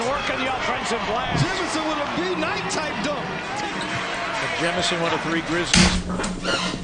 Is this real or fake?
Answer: real